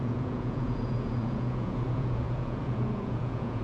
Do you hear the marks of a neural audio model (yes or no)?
yes